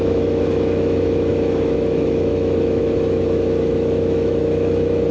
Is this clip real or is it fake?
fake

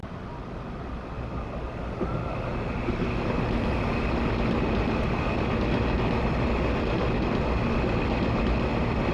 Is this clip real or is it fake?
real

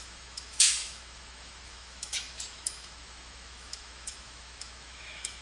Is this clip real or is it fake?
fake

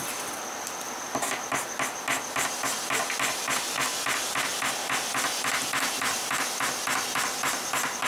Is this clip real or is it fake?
real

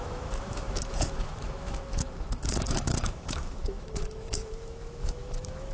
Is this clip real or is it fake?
fake